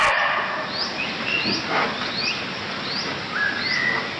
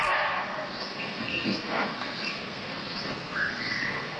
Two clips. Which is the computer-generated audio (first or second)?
second